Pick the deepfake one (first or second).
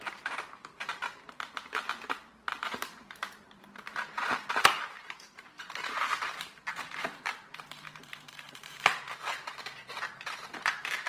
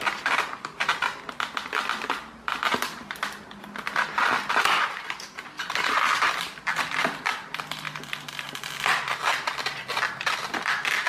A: first